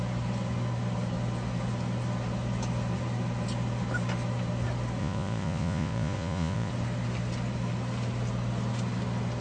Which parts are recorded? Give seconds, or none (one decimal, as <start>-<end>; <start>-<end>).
0.0-5.0; 6.7-9.4